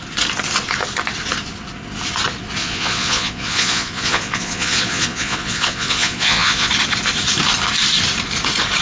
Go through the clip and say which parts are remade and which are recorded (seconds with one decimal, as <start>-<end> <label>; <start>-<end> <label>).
0.0-2.6 recorded; 2.6-6.7 remade; 6.7-8.8 recorded